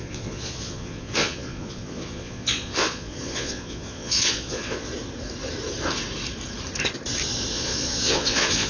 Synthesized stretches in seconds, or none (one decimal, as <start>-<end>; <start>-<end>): 0.0-4.9; 7.5-8.7